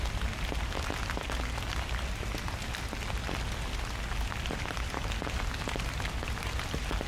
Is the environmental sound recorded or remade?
recorded